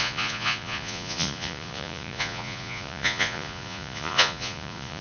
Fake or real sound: fake